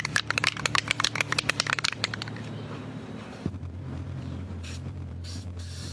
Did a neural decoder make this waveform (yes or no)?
yes